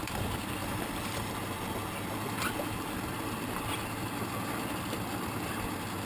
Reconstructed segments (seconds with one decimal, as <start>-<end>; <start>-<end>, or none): 0.6-1.3